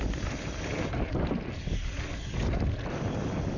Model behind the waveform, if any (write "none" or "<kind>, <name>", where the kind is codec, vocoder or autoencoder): none